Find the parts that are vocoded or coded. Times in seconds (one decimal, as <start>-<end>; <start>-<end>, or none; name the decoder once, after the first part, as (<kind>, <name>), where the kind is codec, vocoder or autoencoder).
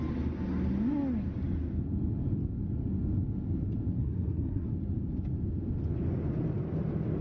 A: 4.0-4.7 (codec, SNAC)